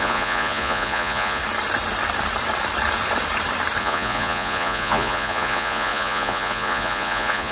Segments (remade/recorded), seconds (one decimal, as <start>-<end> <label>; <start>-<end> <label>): 0.0-1.4 remade; 1.4-3.8 recorded; 3.8-7.5 remade